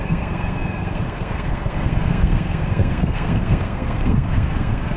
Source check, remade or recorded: remade